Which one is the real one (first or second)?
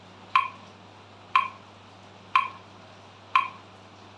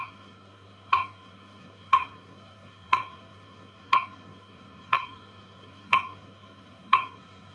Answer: first